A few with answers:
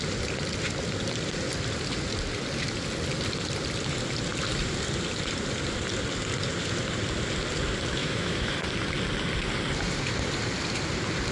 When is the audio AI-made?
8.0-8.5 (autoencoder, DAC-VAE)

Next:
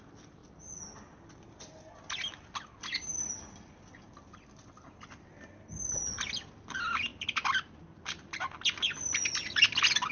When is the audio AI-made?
none

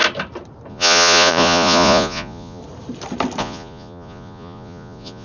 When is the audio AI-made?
0.7-2.6 (vocoder, Vocos); 3.4-5.2

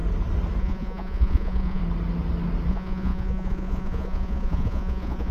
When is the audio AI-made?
0.6-1.8 (vocoder, Vocos); 2.7-5.3

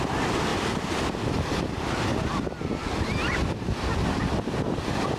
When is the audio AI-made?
0.5-1.0 (vocoder, BigVGAN v2)

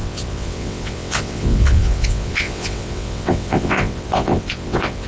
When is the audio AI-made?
0.0-5.1 (vocoder, WaveNeXt)